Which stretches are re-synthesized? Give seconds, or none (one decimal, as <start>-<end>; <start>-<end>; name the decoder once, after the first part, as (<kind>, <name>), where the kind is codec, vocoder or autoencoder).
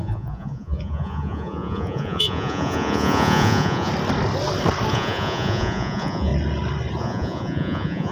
0.0-3.9 (vocoder, Vocos); 4.9-6.3; 7.0-8.1